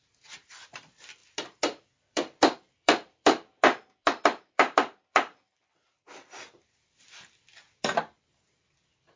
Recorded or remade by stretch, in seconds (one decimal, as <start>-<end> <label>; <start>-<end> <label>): 0.0-1.2 remade; 1.2-2.0 recorded; 2.0-9.2 remade